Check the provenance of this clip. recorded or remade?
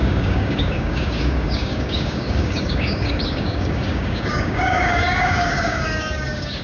remade